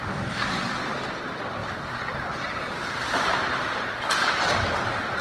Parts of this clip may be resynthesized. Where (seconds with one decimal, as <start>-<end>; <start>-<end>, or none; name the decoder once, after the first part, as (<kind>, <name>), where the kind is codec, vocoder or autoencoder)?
1.6-4.0 (vocoder, BigVGAN v2)

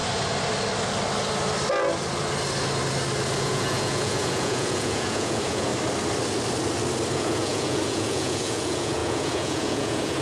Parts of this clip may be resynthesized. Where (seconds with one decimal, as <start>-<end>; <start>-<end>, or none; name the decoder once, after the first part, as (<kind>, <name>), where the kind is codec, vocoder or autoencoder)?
3.4-5.7 (vocoder, Vocos); 7.1-10.2

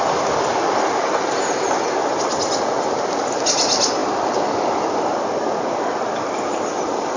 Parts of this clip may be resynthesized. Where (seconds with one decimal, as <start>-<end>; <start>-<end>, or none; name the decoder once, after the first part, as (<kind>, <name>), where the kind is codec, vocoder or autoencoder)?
none